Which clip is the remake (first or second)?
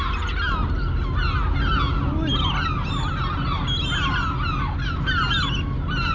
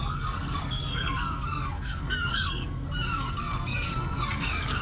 second